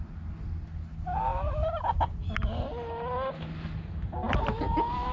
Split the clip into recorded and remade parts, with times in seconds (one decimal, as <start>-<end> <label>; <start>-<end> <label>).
0.0-5.1 recorded